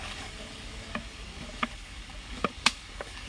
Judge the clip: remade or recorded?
remade